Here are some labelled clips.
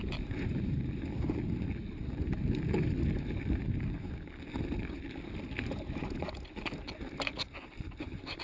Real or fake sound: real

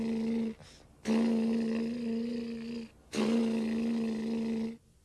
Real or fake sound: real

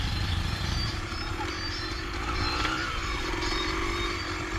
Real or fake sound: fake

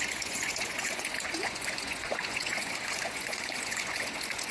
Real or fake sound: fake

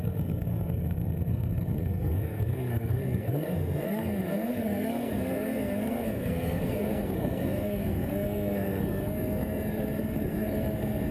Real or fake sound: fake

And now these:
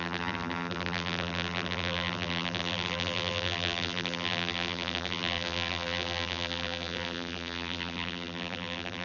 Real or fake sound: fake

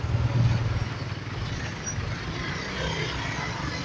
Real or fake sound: real